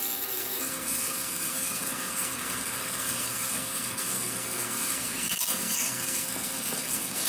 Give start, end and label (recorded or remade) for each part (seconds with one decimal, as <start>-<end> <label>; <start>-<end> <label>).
0.0-7.3 remade